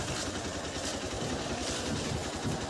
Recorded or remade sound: remade